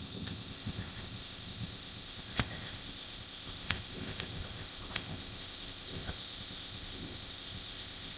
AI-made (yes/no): yes